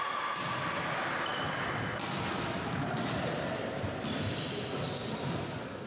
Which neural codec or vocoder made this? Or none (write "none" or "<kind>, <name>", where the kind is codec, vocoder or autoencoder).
none